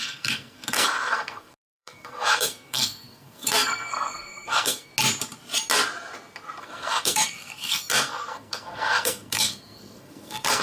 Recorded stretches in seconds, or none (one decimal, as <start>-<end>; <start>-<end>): 4.9-6.6